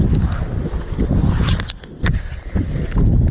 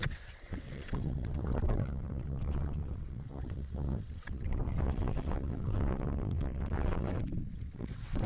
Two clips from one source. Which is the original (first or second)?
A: first